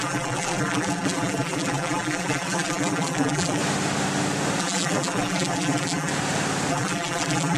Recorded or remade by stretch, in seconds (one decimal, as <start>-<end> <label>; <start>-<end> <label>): 0.0-3.6 remade; 3.6-4.6 recorded; 4.6-6.1 remade; 6.1-6.7 recorded; 6.7-7.6 remade